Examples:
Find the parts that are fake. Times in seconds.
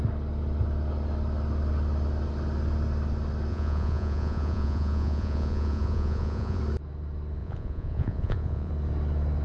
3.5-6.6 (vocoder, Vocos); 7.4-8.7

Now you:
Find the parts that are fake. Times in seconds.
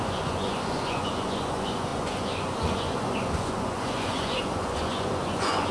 0.0-5.7 (vocoder, Vocos)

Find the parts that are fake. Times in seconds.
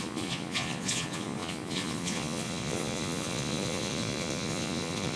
0.0-5.2 (vocoder, Vocos)